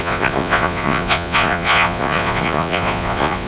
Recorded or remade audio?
remade